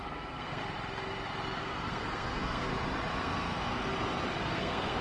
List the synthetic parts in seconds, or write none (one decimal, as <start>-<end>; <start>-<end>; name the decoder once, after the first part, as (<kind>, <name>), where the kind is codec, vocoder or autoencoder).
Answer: 0.0-0.6 (codec, SNAC); 1.6-2.7; 3.2-3.8; 4.4-5.0